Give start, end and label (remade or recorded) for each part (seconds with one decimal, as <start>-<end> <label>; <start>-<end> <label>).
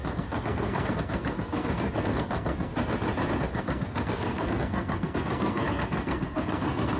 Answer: 0.0-2.7 remade; 2.7-3.6 recorded; 3.6-7.0 remade